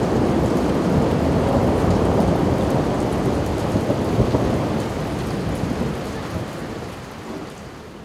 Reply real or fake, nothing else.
real